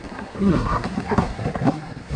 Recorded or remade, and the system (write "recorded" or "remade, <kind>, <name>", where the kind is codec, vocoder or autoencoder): remade, codec, SNAC